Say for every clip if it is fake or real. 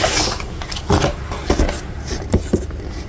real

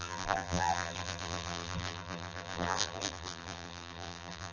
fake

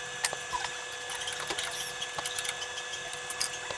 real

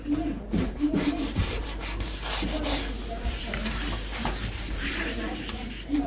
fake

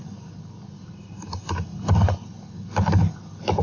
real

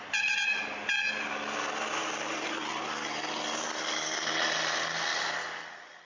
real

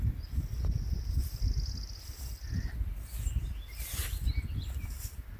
real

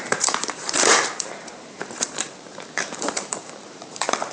fake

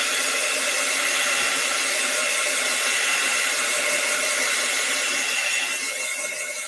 real